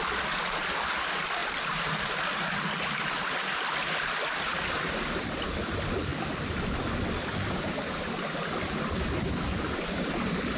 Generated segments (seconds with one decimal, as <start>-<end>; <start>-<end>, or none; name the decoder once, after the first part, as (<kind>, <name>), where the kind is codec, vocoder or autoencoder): none